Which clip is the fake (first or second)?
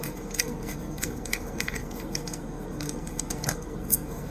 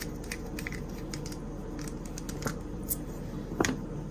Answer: first